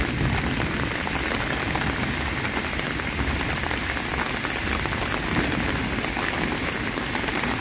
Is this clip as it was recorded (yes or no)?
yes